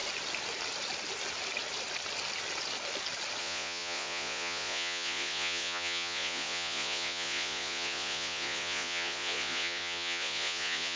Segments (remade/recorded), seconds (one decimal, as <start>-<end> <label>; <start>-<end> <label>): 0.0-3.4 recorded; 3.4-11.0 remade